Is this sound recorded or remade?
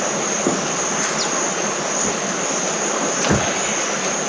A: recorded